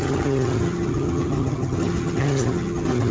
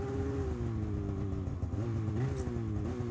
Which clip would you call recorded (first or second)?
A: second